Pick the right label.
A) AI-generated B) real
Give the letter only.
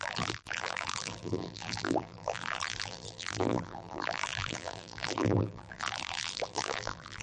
A